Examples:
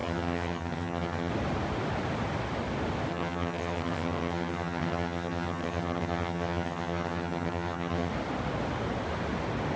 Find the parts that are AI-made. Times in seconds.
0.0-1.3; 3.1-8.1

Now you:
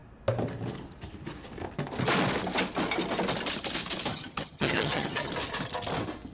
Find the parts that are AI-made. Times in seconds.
4.1-5.3

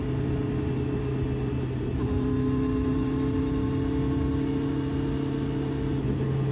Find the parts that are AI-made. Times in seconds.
none

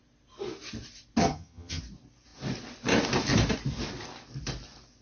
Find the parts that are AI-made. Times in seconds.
1.2-1.8

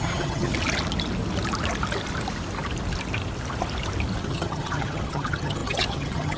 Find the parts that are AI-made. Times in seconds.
0.0-0.5; 4.2-6.4

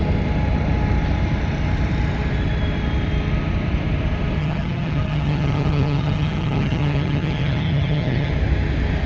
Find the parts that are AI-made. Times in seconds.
4.4-8.3

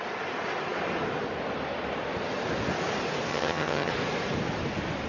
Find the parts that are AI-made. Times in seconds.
3.3-3.9

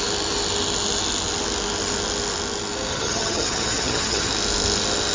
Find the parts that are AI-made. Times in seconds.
2.9-4.3